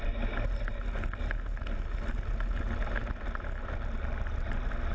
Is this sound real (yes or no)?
yes